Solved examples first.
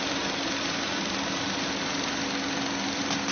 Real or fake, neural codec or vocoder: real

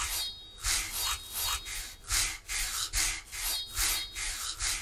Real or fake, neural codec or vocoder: real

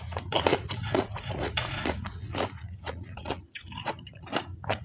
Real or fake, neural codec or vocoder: fake, vocoder, Vocos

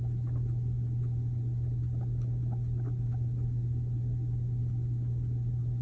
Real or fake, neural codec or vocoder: real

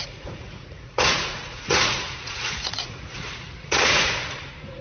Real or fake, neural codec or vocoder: fake, vocoder, Vocos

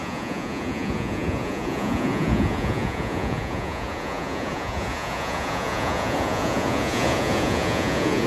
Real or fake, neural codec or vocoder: fake, vocoder, Vocos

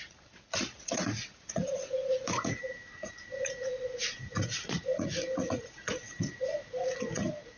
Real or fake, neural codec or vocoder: fake, vocoder, Vocos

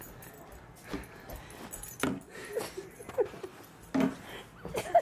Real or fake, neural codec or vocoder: real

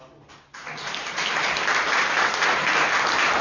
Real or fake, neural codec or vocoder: real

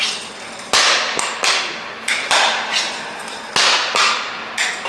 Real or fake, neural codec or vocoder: real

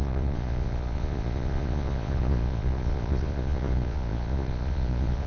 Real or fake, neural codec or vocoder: fake, vocoder, Vocos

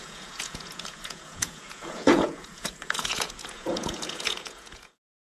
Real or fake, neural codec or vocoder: fake, vocoder, Vocos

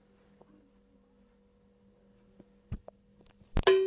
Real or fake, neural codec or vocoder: real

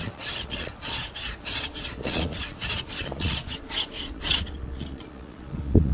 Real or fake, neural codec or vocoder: fake, vocoder, Vocos